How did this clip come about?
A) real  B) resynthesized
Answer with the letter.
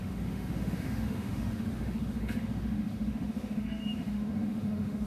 B